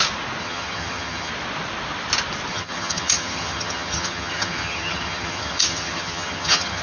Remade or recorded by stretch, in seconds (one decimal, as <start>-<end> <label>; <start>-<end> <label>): 0.0-0.4 recorded; 0.4-1.3 remade; 1.3-2.5 recorded; 2.5-6.8 remade